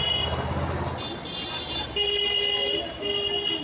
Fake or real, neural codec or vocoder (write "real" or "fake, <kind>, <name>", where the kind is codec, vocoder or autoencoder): real